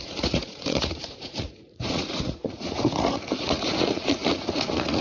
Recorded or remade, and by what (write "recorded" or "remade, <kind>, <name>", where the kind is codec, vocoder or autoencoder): remade, vocoder, Vocos